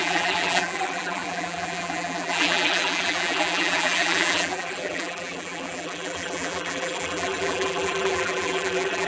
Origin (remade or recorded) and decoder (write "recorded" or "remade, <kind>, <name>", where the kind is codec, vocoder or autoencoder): remade, vocoder, BigVGAN v2